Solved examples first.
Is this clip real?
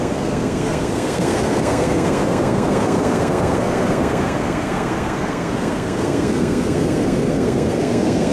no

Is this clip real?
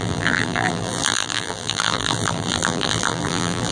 no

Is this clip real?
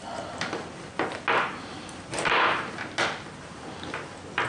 yes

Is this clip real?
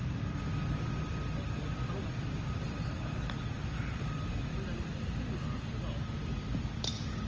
yes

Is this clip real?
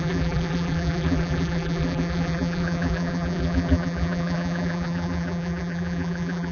no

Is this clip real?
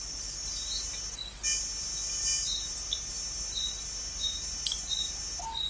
yes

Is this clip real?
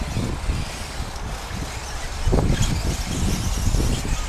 yes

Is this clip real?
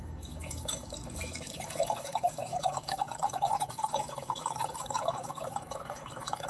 no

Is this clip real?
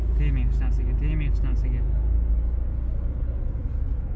yes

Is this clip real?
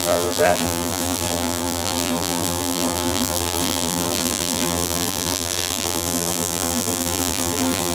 no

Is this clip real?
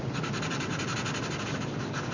yes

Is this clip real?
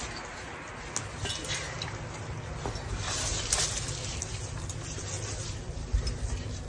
yes